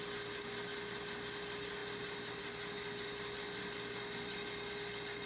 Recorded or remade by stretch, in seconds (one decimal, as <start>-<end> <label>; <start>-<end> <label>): 0.0-5.3 recorded